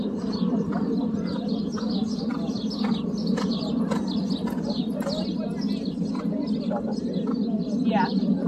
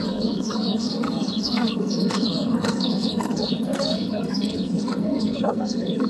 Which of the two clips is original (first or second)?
first